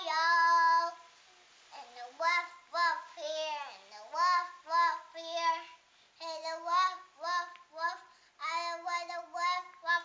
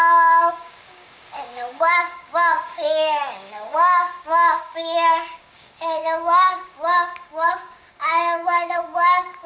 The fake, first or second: second